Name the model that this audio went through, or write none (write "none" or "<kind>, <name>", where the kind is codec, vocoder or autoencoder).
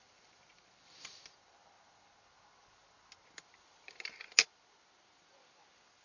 none